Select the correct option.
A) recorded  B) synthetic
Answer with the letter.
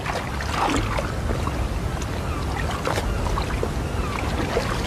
A